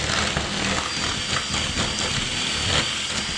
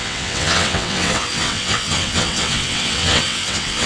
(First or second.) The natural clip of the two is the first